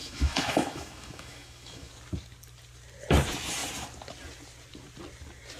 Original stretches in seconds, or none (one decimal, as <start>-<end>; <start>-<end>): 1.9-5.6